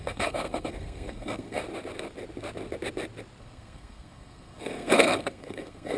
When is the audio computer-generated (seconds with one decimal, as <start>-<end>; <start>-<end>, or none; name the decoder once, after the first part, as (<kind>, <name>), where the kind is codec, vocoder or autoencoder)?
0.0-1.6 (codec, SNAC); 3.4-6.0